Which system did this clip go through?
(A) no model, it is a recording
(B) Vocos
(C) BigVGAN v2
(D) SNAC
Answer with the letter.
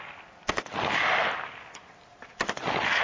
A